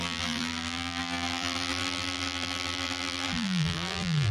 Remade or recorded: remade